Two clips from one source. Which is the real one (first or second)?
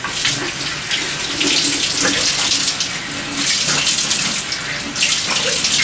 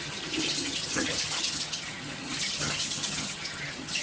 first